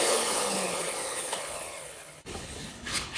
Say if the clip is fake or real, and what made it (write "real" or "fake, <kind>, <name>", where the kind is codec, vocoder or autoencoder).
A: fake, codec, HILCodec